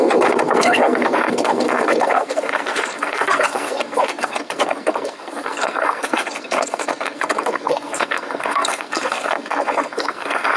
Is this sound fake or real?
fake